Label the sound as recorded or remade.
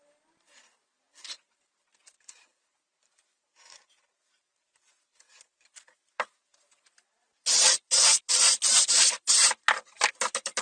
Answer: remade